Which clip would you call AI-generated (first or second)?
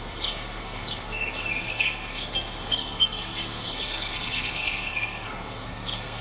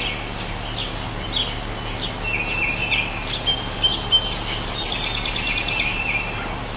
first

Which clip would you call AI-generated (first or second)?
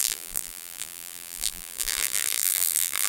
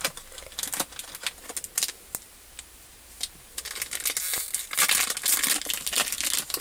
first